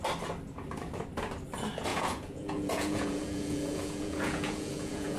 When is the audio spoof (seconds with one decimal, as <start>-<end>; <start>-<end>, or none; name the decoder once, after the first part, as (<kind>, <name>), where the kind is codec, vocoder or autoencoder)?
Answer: 1.9-5.2 (vocoder, Vocos)